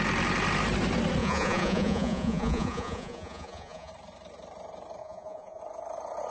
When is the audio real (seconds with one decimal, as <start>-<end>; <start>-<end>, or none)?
0.0-1.2; 3.9-5.0; 5.6-6.3